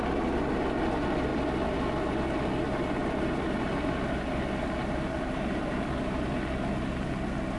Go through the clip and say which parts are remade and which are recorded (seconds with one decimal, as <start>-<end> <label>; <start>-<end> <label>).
0.0-7.6 recorded

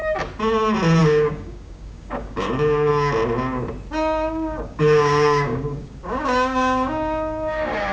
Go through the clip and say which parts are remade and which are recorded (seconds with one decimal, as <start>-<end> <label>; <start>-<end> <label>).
0.0-1.0 recorded; 1.0-2.9 remade; 2.9-3.9 recorded; 3.9-7.9 remade

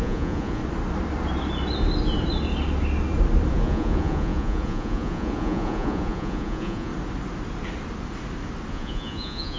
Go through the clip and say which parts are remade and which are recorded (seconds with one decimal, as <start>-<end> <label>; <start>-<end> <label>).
0.0-0.6 remade; 0.6-3.5 recorded; 3.5-6.9 remade; 6.9-8.7 recorded; 8.7-9.6 remade

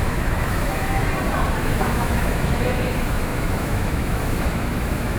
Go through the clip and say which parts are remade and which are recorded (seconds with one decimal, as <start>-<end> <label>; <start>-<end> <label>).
0.0-1.0 remade; 1.0-1.6 recorded; 1.6-5.2 remade

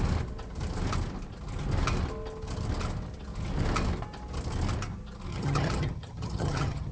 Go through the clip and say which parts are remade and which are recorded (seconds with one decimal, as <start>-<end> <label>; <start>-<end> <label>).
0.0-5.3 recorded; 5.3-6.9 remade

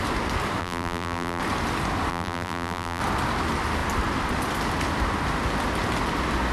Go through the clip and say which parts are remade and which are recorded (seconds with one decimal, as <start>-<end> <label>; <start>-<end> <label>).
0.0-0.6 recorded; 0.6-1.4 remade; 1.4-2.1 recorded; 2.1-3.0 remade; 3.0-6.5 recorded

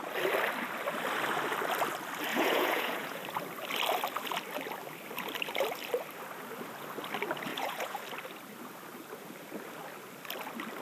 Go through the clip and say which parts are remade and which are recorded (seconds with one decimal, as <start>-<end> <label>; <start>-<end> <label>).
0.0-2.3 recorded; 2.3-3.2 remade; 3.2-7.5 recorded; 7.5-8.0 remade; 8.0-10.8 recorded

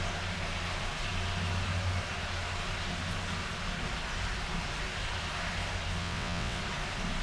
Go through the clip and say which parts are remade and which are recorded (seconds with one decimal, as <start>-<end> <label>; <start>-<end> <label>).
0.0-6.0 recorded; 6.0-6.6 remade; 6.6-7.2 recorded